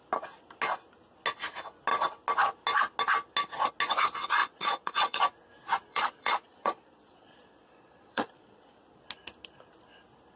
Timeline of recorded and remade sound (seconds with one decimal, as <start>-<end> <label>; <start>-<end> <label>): 0.0-4.4 recorded; 4.4-5.2 remade; 5.2-5.9 recorded; 5.9-8.9 remade; 8.9-10.4 recorded